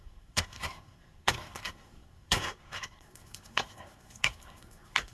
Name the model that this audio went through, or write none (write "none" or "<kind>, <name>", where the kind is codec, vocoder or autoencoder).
codec, SNAC